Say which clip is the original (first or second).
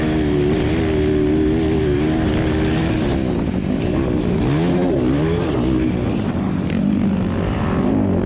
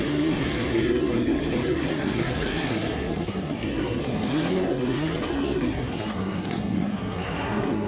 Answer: first